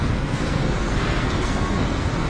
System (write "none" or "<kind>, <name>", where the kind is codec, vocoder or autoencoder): codec, SNAC